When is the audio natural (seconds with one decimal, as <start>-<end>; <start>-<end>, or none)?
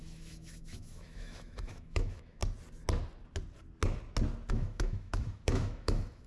2.4-4.5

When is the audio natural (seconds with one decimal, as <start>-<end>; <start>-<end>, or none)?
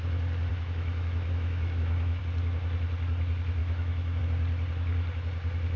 0.0-0.5; 2.2-3.6; 4.2-5.8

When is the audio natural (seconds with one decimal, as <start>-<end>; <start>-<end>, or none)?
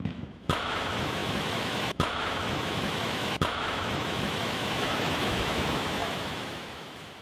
none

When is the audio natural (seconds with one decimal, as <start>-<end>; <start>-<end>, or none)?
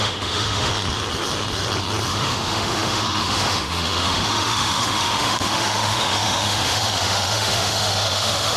0.7-2.1